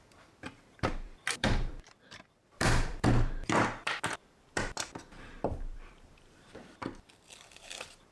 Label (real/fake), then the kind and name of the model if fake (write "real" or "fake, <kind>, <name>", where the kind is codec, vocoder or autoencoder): fake, vocoder, BigVGAN v2